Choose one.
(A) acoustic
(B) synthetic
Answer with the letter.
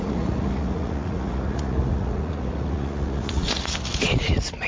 B